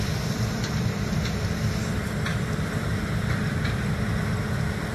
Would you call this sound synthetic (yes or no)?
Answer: yes